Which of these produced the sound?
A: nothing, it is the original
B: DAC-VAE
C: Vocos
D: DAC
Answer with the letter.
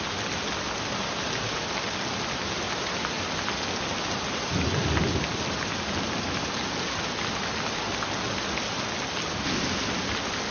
A